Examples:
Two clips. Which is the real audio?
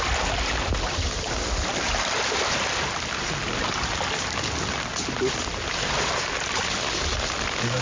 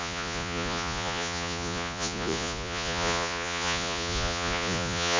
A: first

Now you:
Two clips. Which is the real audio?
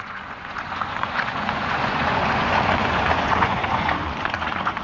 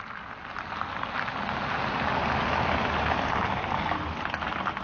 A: second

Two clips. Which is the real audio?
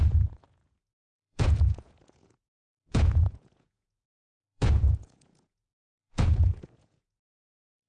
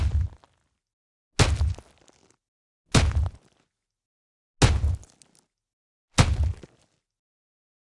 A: second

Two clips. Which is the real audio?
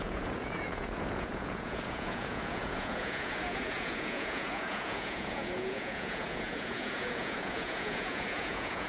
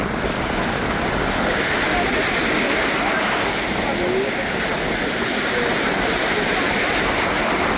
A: second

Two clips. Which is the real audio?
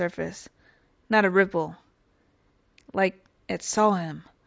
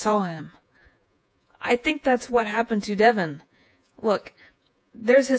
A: first